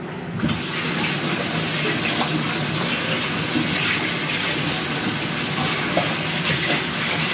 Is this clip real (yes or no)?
yes